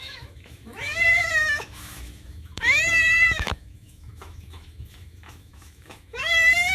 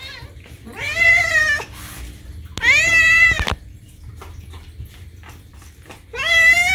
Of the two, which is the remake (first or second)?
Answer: first